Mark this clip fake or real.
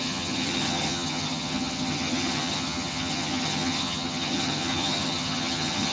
fake